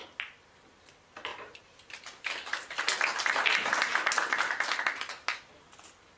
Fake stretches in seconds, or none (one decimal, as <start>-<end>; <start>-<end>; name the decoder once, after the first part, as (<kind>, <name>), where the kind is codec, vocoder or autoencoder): none